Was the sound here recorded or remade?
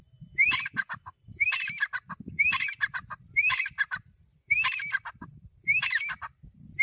remade